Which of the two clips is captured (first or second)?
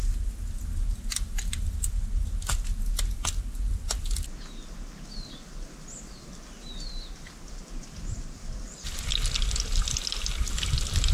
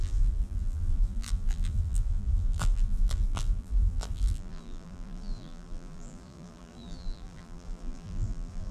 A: first